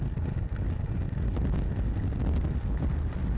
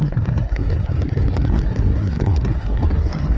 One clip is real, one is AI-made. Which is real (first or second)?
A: first